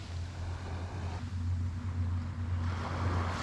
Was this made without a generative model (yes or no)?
yes